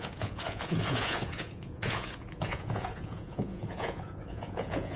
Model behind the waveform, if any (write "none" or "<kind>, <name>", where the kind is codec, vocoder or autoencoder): vocoder, Vocos